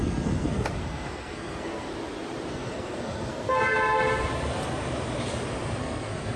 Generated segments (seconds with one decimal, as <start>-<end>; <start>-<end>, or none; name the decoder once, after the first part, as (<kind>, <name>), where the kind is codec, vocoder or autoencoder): 0.0-1.9 (codec, SNAC); 2.5-3.6; 5.8-6.4